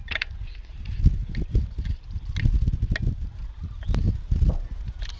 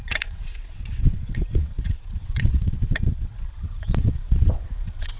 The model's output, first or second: second